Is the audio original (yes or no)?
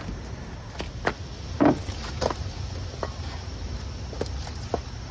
yes